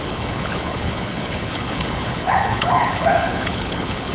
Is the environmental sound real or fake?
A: fake